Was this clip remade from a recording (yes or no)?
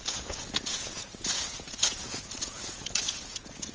yes